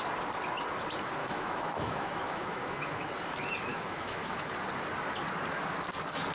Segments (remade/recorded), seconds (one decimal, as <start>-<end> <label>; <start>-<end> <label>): 0.0-1.2 recorded; 1.2-3.1 remade; 3.1-3.7 recorded; 3.7-4.5 remade; 4.5-6.3 recorded